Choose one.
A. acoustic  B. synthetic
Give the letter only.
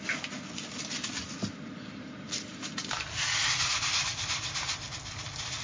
A